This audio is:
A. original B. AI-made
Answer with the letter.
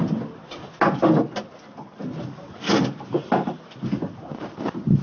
A